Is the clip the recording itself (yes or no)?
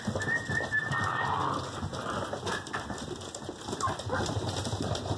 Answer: yes